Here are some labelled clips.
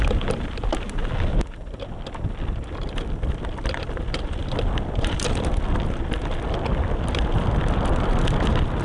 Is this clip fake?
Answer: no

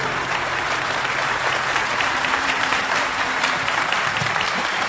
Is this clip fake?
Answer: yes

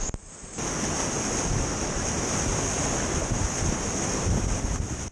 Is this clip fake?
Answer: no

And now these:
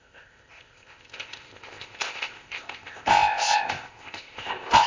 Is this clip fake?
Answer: yes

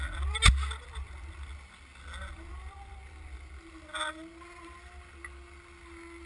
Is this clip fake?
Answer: no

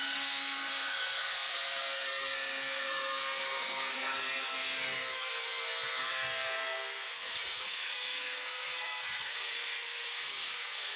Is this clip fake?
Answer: yes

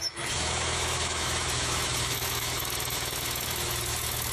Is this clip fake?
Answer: yes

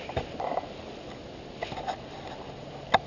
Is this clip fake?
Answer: no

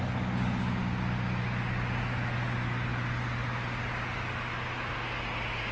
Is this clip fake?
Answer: no